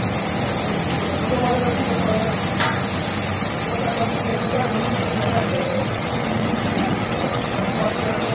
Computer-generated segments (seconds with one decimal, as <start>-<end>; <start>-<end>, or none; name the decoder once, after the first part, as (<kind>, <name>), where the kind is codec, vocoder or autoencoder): 4.3-8.3 (vocoder, WaveNeXt)